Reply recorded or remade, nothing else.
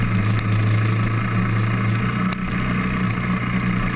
recorded